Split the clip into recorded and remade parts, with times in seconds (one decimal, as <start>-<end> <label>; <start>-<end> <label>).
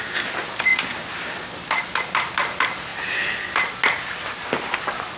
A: 0.0-5.2 recorded